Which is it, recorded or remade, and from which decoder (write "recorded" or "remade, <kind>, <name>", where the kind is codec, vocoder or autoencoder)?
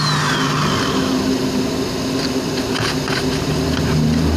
recorded